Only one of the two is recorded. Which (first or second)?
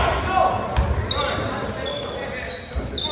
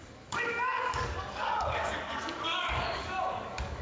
first